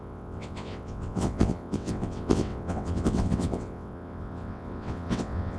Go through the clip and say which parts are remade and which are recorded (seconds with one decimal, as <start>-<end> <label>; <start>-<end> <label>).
0.0-5.6 remade